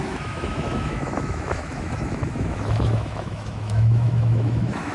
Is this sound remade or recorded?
remade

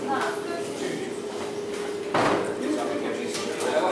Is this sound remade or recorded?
recorded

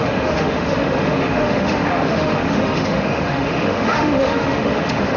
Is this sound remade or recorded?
remade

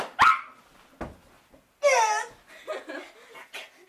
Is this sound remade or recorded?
recorded